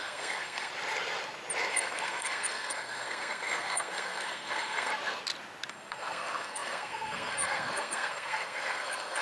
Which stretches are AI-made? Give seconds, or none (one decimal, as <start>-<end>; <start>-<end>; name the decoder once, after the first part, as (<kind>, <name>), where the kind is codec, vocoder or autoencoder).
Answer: 0.0-0.7 (codec, SNAC); 1.7-4.9; 5.7-9.2